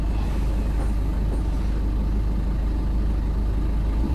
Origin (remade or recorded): recorded